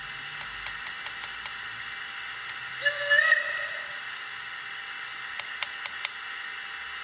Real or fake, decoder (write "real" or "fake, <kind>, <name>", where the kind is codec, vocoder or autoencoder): real